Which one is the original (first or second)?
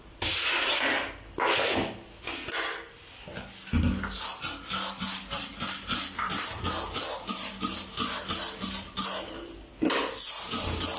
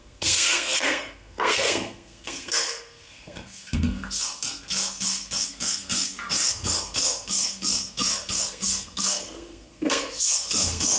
first